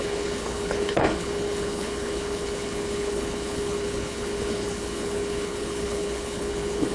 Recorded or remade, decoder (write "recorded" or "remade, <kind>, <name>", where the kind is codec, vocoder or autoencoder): remade, codec, HILCodec